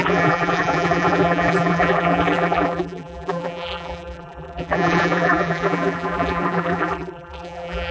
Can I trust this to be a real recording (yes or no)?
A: no